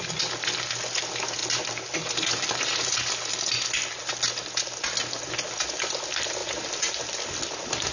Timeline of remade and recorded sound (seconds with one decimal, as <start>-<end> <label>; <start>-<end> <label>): 0.0-7.9 recorded